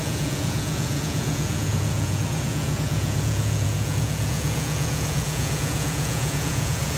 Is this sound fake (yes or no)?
yes